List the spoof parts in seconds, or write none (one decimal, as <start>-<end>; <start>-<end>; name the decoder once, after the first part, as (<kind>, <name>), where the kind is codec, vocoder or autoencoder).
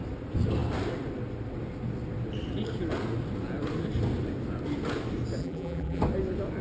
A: 5.4-6.0 (vocoder, BigVGAN v2)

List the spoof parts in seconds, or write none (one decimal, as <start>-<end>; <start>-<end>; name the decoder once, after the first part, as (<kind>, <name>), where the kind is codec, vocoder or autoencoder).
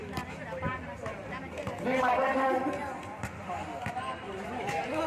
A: 0.0-0.7 (vocoder, BigVGAN v2); 2.2-4.3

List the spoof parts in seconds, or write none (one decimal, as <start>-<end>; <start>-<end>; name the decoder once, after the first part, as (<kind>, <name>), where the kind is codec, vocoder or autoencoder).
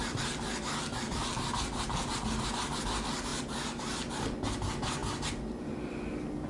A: none